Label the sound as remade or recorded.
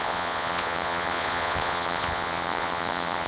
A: remade